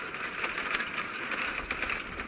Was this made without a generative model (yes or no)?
yes